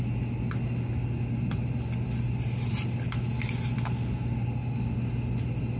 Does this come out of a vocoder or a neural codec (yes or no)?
no